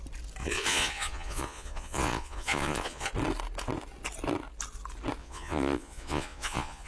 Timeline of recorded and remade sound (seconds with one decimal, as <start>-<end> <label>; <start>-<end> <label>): 0.0-0.4 recorded; 0.4-3.1 remade; 3.1-5.2 recorded; 5.2-6.9 remade